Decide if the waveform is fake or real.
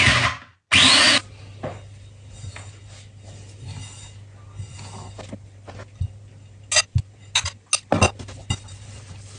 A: real